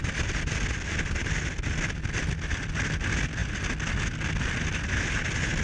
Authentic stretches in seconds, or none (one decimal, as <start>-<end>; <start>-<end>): 0.0-5.6